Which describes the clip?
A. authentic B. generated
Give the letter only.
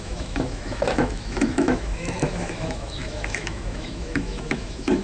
B